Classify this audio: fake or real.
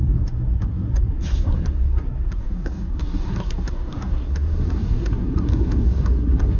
fake